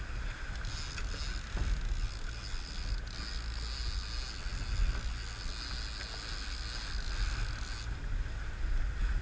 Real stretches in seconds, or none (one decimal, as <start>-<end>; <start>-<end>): 0.0-9.2